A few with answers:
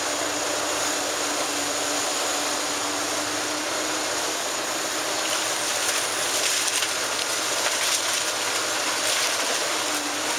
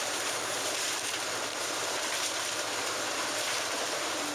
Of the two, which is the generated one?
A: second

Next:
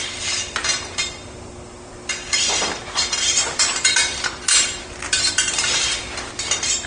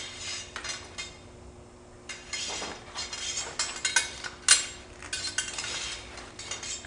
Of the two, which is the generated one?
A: first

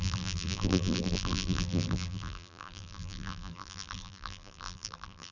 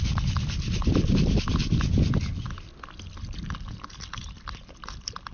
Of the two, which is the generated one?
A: first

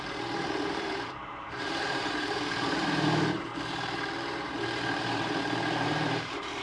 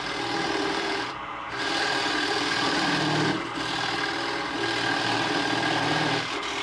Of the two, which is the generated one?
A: first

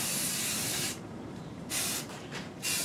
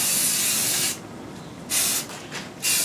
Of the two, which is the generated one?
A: first